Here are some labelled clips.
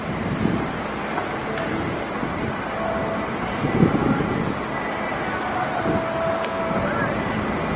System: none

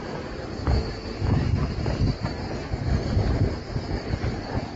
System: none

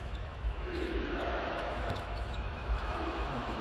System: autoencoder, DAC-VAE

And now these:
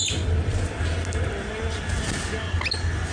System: none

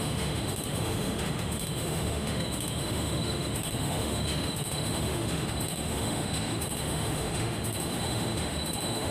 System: autoencoder, DAC-VAE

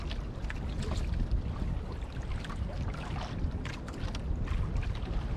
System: none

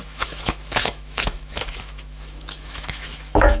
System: autoencoder, DAC-VAE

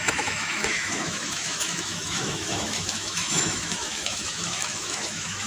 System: autoencoder, DAC-VAE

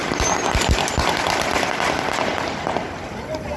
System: none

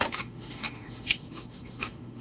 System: autoencoder, DAC-VAE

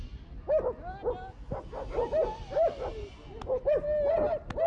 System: none